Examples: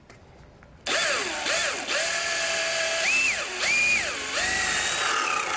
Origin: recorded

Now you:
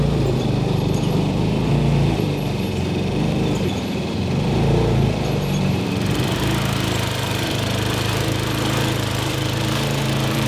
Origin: remade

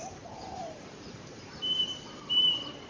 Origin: remade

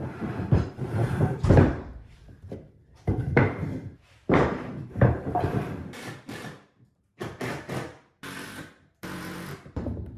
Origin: remade